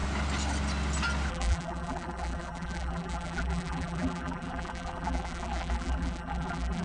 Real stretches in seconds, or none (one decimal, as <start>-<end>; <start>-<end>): 0.0-1.3